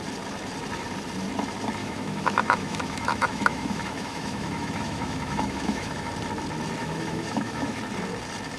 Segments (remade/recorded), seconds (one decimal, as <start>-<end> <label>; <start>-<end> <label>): 0.0-1.8 recorded; 1.8-6.1 remade; 6.1-6.8 recorded; 6.8-7.8 remade; 7.8-8.6 recorded